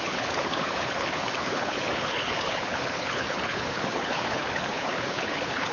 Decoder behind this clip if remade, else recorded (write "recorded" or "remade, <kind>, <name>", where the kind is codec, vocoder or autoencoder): remade, codec, HILCodec